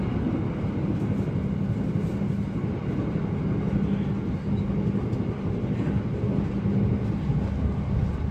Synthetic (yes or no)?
no